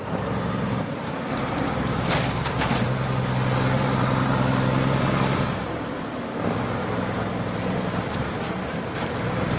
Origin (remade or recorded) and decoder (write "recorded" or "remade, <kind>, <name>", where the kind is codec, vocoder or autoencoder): remade, vocoder, BigVGAN v2